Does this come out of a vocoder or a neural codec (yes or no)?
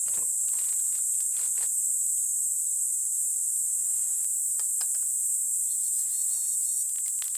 no